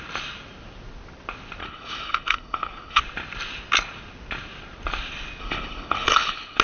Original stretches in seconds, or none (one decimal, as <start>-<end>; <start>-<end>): 0.0-1.6; 3.0-5.4